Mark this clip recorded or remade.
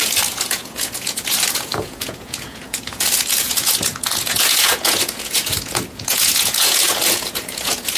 remade